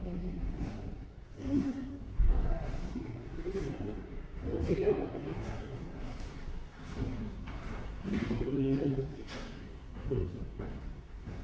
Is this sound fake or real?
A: fake